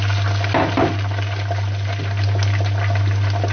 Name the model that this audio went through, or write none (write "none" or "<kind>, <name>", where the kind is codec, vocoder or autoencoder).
none